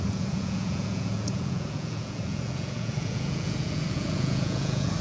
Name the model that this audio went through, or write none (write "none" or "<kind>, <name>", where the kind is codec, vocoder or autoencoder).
vocoder, Vocos